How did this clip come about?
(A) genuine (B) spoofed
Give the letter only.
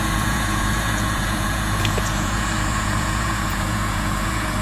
B